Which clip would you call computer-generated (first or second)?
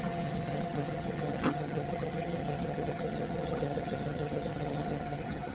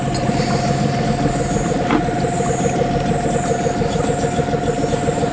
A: first